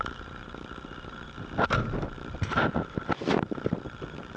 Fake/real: real